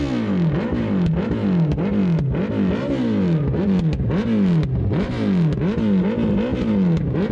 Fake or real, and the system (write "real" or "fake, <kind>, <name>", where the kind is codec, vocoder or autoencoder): real